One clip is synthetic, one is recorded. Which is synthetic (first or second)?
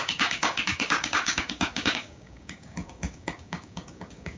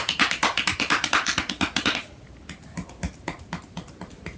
first